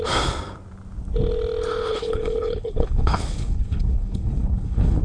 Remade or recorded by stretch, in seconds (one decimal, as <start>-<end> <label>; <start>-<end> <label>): 0.0-1.9 recorded; 1.9-5.0 remade